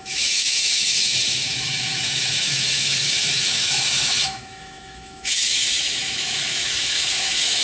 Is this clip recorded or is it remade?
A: remade